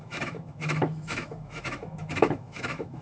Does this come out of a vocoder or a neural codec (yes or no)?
yes